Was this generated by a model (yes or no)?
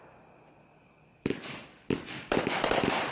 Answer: no